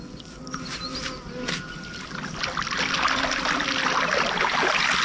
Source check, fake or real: real